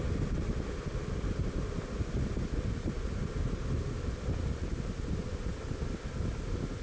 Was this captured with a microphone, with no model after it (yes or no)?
yes